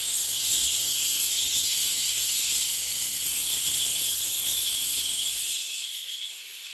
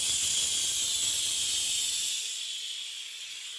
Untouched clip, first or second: second